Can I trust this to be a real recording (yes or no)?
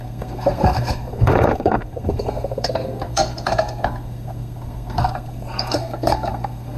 no